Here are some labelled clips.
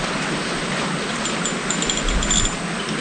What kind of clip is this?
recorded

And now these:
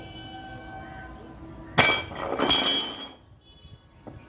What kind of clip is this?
recorded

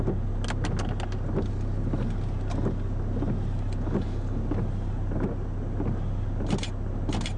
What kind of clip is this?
recorded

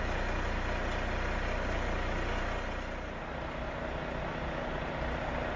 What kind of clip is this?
recorded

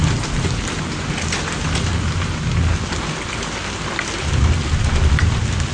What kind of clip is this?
recorded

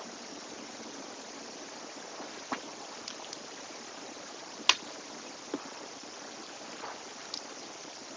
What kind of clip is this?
recorded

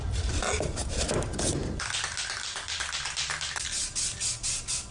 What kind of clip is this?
recorded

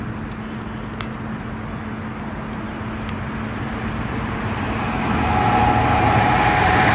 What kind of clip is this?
recorded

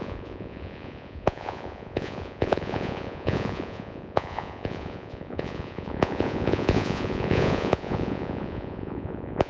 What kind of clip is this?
remade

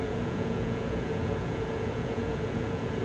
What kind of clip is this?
remade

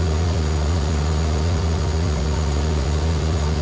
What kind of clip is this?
remade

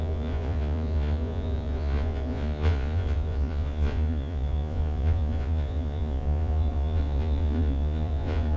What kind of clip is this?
remade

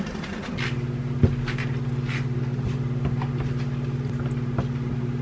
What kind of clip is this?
recorded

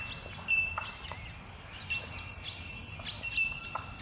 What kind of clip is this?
recorded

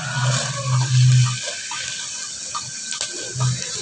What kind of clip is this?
recorded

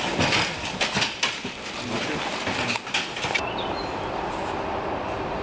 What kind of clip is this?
recorded